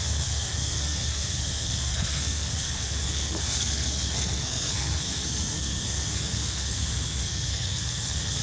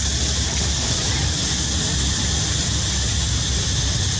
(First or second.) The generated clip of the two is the first